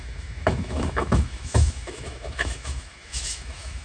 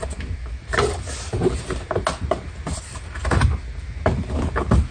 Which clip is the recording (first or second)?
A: second